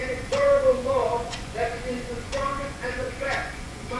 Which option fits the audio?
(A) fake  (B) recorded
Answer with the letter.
A